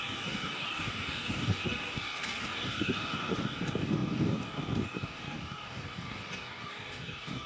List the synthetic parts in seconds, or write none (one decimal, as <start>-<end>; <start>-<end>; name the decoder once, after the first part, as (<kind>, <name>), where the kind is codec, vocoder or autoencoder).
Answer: 0.0-7.5 (codec, DAC)